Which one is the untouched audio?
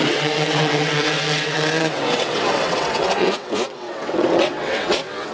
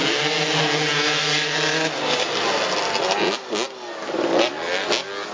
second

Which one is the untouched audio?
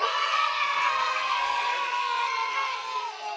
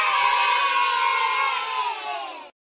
second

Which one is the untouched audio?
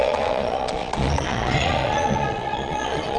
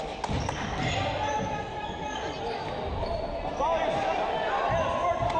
second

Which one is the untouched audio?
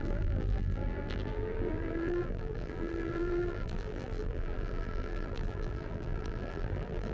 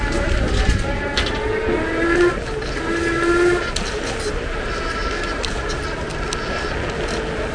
second